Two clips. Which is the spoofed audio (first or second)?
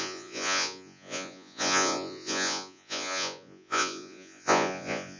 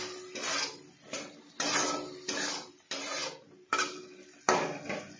first